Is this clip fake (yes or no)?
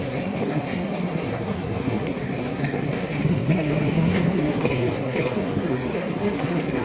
yes